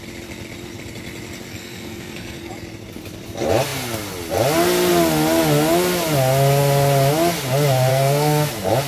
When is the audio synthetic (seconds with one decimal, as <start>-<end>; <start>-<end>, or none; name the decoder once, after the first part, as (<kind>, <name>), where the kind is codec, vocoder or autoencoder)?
1.5-2.5 (codec, SNAC); 7.9-8.5